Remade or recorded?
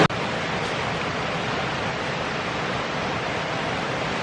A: recorded